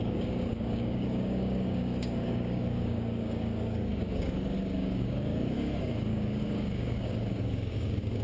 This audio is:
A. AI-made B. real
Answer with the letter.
A